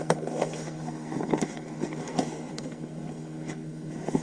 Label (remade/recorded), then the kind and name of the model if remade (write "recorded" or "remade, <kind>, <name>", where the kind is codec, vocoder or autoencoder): remade, codec, SNAC